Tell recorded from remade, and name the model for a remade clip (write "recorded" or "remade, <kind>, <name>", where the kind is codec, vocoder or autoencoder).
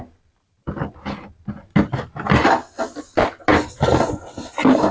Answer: recorded